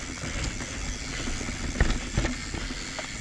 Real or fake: real